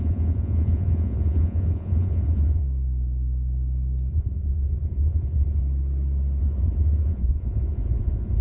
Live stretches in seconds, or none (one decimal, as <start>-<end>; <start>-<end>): 2.6-4.1; 5.6-6.4